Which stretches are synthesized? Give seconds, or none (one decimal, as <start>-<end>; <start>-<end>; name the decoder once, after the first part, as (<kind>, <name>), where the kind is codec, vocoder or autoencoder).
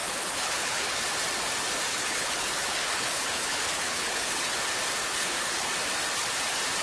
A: 0.0-1.0 (codec, HILCodec); 1.9-4.6; 5.0-5.7